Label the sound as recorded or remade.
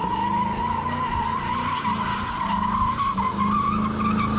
recorded